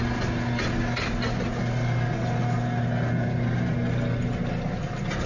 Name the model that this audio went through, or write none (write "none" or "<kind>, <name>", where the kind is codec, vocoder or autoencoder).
none